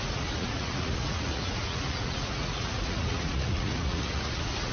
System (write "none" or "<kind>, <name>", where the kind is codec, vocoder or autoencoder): vocoder, Vocos